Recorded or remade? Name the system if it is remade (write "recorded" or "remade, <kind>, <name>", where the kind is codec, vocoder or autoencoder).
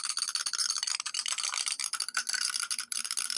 recorded